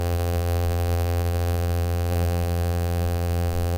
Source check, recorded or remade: remade